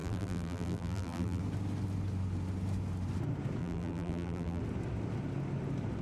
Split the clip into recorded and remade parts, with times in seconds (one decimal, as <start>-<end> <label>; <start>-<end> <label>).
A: 0.0-1.4 remade; 1.4-3.6 recorded; 3.6-4.6 remade; 4.6-6.0 recorded